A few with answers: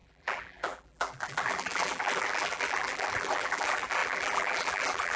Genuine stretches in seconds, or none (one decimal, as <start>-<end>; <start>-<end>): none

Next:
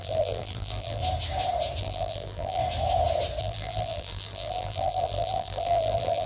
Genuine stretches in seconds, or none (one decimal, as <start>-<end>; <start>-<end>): 1.0-1.8; 2.6-3.4

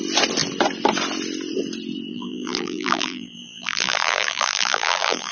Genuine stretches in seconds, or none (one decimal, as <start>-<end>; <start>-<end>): 0.0-2.1